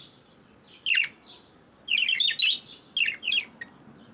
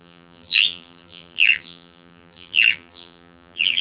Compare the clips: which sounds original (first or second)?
first